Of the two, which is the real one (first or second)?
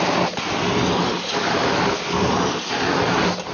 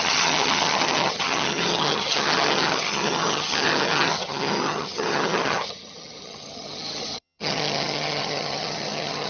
first